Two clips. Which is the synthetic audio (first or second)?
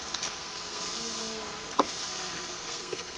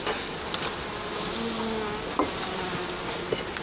first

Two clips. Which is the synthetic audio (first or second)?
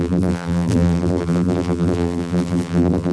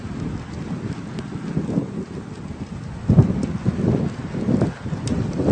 first